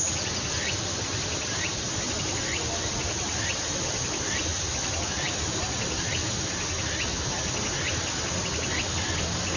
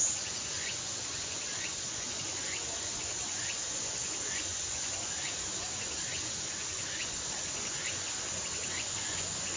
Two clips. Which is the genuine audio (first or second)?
first